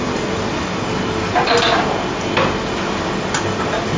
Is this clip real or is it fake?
fake